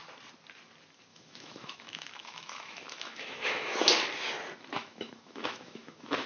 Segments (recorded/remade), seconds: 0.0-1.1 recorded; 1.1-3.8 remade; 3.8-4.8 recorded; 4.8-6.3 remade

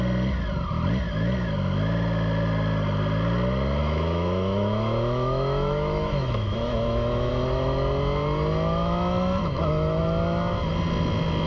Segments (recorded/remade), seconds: 0.0-3.8 recorded; 3.8-7.3 remade; 7.3-9.4 recorded; 9.4-10.0 remade; 10.0-11.5 recorded

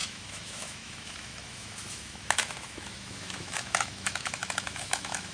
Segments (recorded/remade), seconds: 0.0-5.3 remade

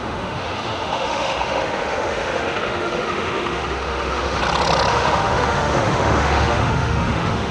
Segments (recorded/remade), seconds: 0.0-4.4 remade; 4.4-4.9 recorded; 4.9-7.5 remade

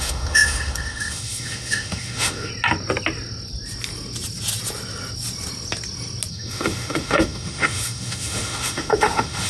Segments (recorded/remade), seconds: 0.0-2.5 remade; 2.5-6.3 recorded; 6.3-9.5 remade

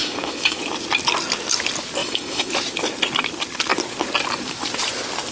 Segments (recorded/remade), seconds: 0.0-0.6 remade; 0.6-2.0 recorded; 2.0-2.5 remade; 2.5-5.3 recorded

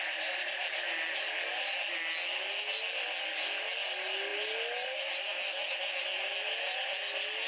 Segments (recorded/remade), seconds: 0.0-7.5 recorded

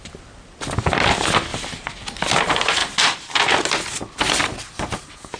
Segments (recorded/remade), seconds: 0.0-5.4 recorded